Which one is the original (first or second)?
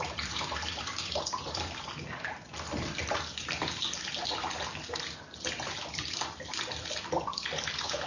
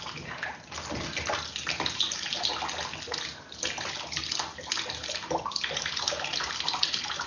second